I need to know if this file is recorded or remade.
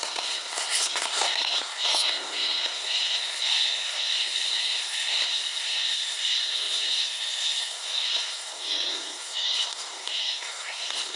remade